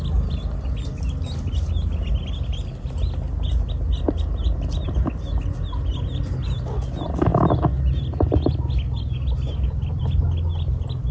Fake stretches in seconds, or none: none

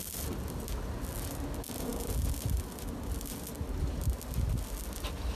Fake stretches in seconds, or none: none

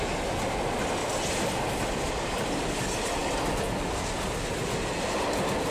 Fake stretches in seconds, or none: 1.0-2.7 (vocoder, BigVGAN v2)

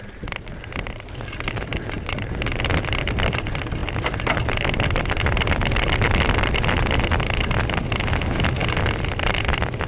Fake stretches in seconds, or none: 1.7-3.4 (vocoder, BigVGAN v2)

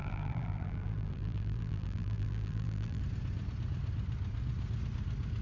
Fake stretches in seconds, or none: 0.0-3.0 (vocoder, BigVGAN v2)

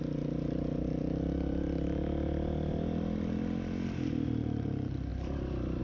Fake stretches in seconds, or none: 5.1-5.8 (vocoder, BigVGAN v2)

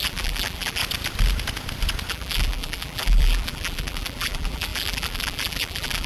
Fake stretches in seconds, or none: 0.0-0.8 (vocoder, BigVGAN v2); 2.1-6.1